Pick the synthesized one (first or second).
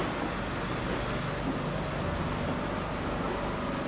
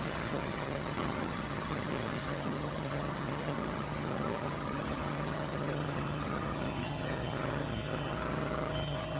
second